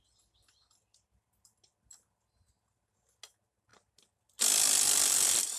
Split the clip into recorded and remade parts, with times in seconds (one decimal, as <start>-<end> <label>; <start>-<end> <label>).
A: 0.0-5.6 recorded